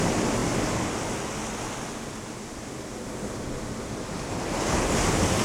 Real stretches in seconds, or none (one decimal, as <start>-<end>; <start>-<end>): 0.0-2.9; 4.8-5.4